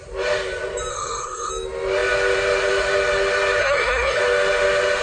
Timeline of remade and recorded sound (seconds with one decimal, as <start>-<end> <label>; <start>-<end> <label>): 0.0-0.9 recorded; 0.9-1.5 remade; 1.5-3.6 recorded; 3.6-4.2 remade; 4.2-5.0 recorded